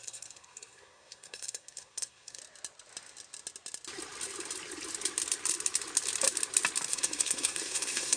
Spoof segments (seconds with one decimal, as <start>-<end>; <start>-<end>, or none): 0.0-2.4; 6.9-8.2